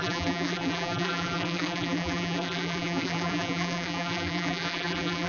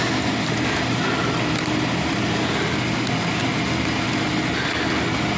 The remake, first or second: first